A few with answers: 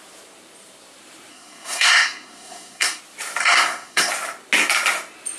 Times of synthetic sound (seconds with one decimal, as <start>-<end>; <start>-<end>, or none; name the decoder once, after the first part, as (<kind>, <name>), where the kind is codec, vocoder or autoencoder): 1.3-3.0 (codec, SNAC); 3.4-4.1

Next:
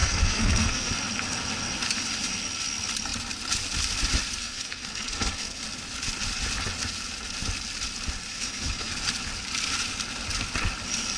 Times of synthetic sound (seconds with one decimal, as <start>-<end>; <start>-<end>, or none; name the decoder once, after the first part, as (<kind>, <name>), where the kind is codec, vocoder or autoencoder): 0.0-0.9 (codec, SNAC); 4.4-5.6; 8.3-8.9

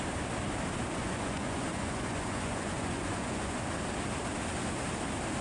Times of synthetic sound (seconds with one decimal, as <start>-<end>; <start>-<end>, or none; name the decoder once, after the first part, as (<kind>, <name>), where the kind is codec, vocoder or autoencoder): 1.0-3.6 (vocoder, Vocos)

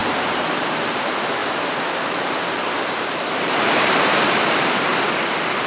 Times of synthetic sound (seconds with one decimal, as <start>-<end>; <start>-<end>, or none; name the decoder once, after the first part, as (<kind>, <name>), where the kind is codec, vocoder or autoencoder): 0.6-1.4 (vocoder, BigVGAN v2); 2.5-4.9